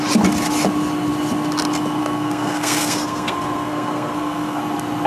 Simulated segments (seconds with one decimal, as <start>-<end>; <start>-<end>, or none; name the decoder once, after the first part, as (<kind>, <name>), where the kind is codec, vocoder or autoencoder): 2.0-4.6 (codec, SNAC)